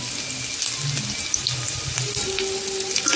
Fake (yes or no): no